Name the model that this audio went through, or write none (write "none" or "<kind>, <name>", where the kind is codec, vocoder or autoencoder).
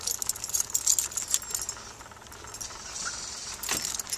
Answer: none